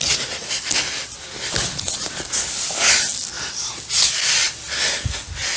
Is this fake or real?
real